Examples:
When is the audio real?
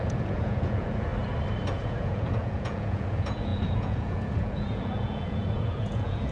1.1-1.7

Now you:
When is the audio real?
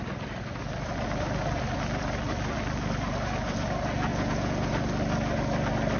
0.0-4.1; 4.7-6.0